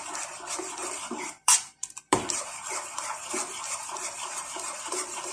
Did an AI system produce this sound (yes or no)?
yes